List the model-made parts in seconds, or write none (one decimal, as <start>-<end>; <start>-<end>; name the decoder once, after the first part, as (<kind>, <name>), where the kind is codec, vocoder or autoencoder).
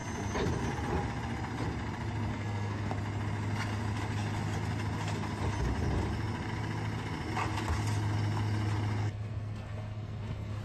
2.3-2.9 (codec, SNAC); 9.0-10.6